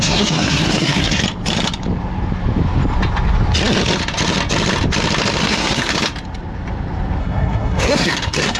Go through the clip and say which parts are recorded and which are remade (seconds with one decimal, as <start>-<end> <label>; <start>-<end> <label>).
0.0-1.2 remade; 1.2-5.4 recorded; 5.4-5.9 remade; 5.9-7.2 recorded; 7.2-8.6 remade

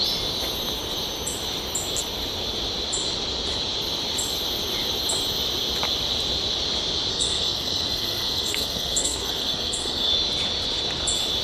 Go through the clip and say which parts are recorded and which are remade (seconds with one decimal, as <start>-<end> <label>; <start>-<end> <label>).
0.0-7.1 recorded; 7.1-10.1 remade; 10.1-11.4 recorded

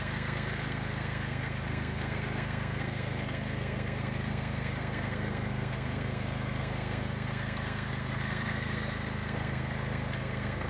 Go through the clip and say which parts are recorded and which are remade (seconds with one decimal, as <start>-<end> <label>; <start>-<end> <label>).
0.0-10.7 remade

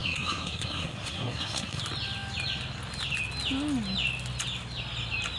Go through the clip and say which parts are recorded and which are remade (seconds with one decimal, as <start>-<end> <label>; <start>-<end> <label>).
0.0-1.8 remade; 1.8-5.4 recorded